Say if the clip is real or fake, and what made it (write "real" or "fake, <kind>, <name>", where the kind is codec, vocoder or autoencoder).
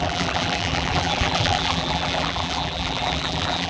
fake, vocoder, BigVGAN v2